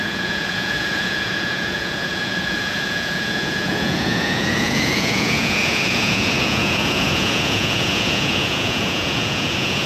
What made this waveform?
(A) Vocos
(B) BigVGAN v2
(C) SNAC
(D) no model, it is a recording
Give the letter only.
A